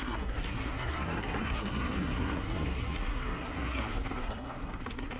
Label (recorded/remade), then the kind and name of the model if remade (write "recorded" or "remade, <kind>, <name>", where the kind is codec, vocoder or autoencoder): remade, codec, SNAC